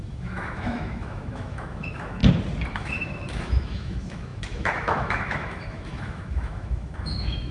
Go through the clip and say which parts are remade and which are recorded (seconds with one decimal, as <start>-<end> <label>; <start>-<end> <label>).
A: 0.0-2.2 remade; 2.2-2.7 recorded; 2.7-7.5 remade